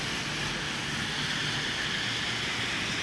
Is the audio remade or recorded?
recorded